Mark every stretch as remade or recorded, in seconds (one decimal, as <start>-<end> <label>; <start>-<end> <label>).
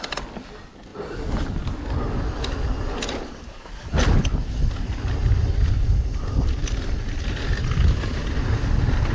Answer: 0.0-9.1 recorded